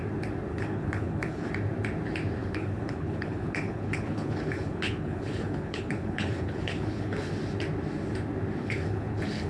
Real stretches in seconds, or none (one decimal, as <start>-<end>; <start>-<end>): 0.0-0.5; 1.5-2.4; 7.3-8.6